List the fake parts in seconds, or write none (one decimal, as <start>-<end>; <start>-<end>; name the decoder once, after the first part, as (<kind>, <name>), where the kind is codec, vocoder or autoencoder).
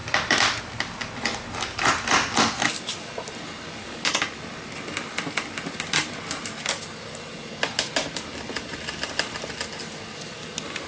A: none